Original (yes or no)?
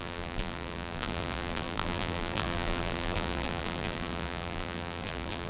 no